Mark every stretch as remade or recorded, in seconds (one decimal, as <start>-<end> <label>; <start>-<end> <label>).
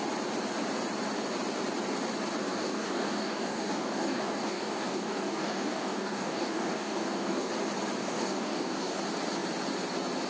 0.0-2.5 recorded; 2.5-7.5 remade; 7.5-8.0 recorded; 8.0-9.0 remade; 9.0-10.3 recorded